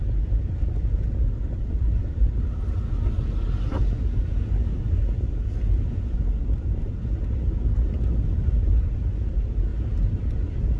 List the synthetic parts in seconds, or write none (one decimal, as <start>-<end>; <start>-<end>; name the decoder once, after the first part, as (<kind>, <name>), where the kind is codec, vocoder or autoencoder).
none